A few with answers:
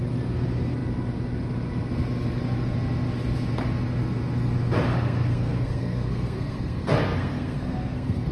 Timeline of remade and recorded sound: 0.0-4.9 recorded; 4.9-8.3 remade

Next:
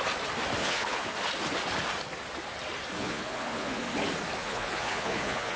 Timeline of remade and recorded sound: 0.0-0.6 recorded; 0.6-1.1 remade; 1.1-3.0 recorded; 3.0-3.8 remade; 3.8-4.4 recorded; 4.4-5.6 remade